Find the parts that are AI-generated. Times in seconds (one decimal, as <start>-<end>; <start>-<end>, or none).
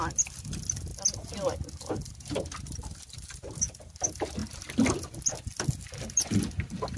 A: none